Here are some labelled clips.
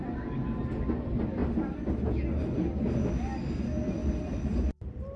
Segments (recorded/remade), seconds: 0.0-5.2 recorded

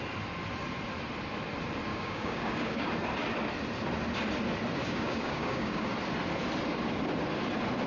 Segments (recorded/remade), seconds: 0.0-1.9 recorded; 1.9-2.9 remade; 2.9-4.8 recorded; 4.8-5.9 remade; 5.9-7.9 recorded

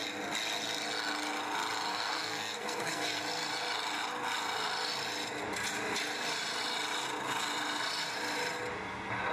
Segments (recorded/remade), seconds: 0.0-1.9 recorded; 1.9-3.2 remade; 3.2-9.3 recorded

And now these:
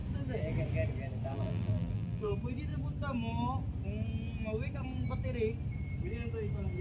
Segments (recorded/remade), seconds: 0.0-1.3 recorded; 1.3-2.3 remade; 2.3-6.8 recorded

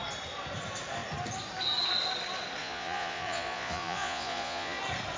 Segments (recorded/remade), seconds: 0.0-2.6 recorded; 2.6-4.8 remade; 4.8-5.2 recorded